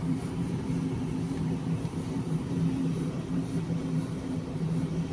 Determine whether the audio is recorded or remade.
remade